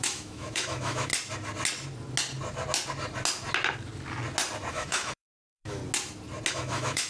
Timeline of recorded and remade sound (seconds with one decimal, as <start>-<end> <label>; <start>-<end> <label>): 0.0-1.1 remade; 1.1-4.7 recorded; 4.7-5.8 remade; 5.8-6.5 recorded; 6.5-7.1 remade